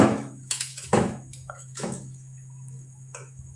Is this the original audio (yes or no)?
no